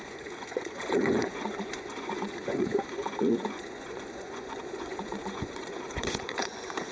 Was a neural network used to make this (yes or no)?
yes